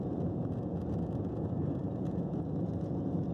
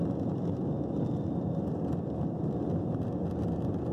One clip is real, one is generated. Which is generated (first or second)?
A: first